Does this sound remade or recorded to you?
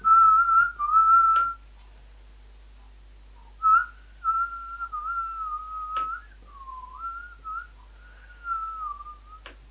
recorded